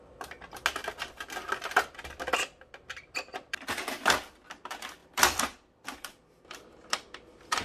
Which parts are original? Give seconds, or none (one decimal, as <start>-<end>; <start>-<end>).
0.0-5.0; 6.3-7.6